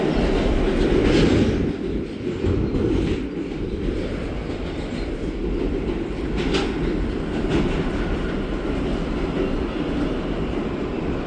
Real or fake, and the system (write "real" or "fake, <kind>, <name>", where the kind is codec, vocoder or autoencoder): real